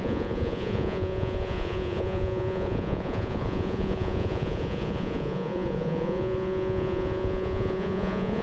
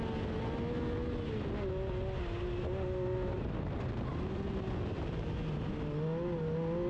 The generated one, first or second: first